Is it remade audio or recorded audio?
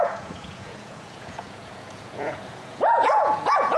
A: remade